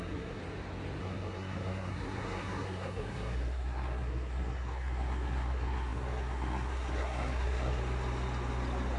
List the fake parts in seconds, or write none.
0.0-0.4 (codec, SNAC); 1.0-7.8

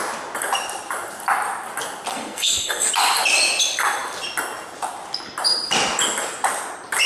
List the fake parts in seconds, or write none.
2.1-2.9 (codec, SNAC)

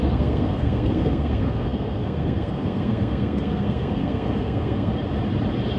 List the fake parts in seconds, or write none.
0.0-4.9 (codec, SNAC)

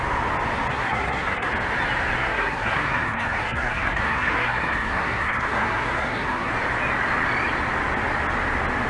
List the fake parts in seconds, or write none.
0.7-1.5 (codec, SNAC); 2.2-6.5

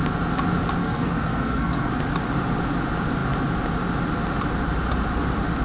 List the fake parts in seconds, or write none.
0.8-1.9 (codec, SNAC)

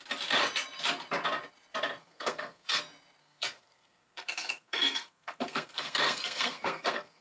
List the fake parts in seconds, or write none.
2.0-2.8 (codec, SNAC); 3.2-7.2

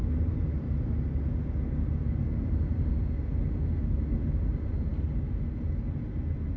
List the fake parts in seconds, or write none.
none